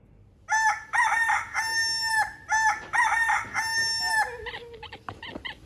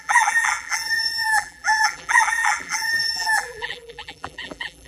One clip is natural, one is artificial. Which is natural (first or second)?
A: first